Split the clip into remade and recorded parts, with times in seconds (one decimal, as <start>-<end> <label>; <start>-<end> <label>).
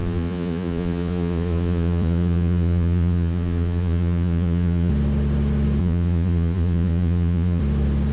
0.0-4.9 remade; 4.9-5.8 recorded; 5.8-7.6 remade; 7.6-8.1 recorded